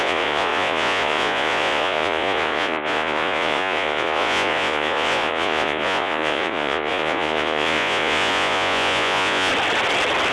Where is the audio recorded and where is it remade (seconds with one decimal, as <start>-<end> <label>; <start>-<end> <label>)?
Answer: 0.0-9.5 remade; 9.5-10.3 recorded